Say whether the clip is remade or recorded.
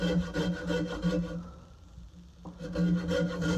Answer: recorded